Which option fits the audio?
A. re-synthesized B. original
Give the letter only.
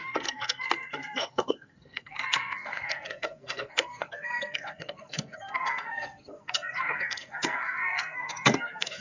A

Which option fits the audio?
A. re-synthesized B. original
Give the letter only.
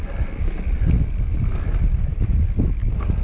B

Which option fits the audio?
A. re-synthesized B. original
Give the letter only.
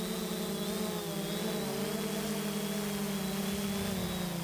B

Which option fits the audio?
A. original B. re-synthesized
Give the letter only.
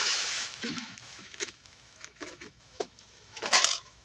B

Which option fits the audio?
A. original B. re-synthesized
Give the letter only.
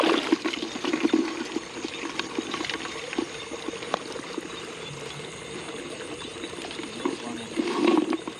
A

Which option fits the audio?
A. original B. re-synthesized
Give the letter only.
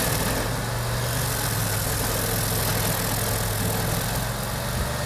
A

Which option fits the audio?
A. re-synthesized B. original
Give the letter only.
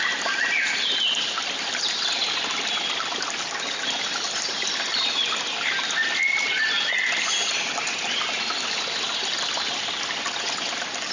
B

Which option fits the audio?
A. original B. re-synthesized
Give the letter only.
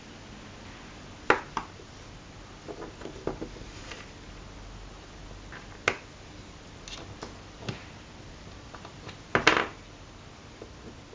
A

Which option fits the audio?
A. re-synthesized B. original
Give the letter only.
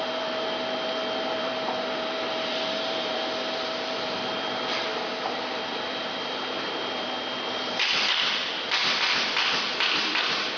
A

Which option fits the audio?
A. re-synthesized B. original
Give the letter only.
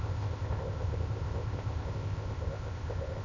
A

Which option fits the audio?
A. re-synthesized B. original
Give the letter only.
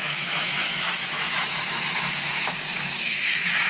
A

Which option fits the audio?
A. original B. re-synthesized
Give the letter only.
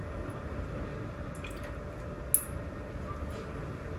A